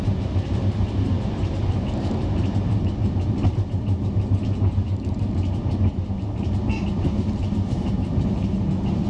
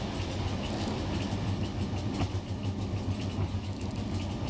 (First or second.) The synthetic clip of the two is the first